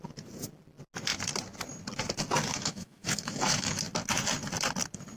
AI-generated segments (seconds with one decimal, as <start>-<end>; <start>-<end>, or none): 2.5-3.8